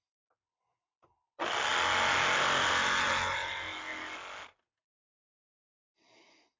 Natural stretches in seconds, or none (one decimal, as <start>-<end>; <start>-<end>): 0.0-6.6